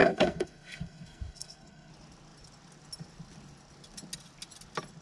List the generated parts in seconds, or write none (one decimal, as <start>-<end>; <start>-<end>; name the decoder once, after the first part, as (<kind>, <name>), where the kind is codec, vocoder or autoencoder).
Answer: 0.0-1.9 (codec, SNAC)